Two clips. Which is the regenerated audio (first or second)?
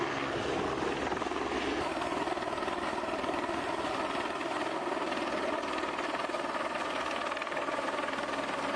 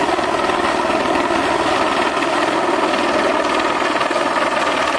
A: first